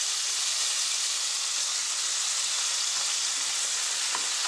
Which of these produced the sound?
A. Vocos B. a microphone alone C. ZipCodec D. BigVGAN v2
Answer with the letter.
B